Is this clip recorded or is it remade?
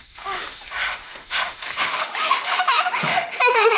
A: remade